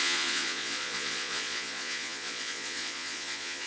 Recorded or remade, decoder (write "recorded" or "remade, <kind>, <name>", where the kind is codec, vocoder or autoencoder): remade, vocoder, Vocos